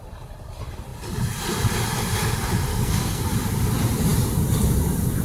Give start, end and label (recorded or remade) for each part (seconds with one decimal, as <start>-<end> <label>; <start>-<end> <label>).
0.0-2.7 recorded; 2.7-3.2 remade; 3.2-5.2 recorded